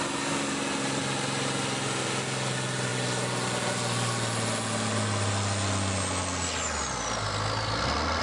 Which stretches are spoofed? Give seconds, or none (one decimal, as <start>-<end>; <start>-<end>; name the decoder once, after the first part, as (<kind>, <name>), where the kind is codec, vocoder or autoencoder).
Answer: none